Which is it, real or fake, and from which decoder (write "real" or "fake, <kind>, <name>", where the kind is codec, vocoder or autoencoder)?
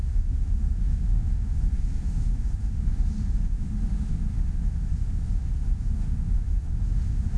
fake, autoencoder, DAC-VAE